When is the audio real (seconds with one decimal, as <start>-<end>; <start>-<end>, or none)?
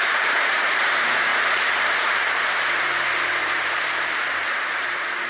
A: 1.3-2.0